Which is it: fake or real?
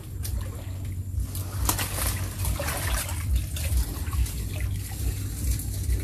real